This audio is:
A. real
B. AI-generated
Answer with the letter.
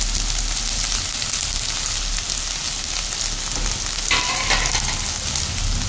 A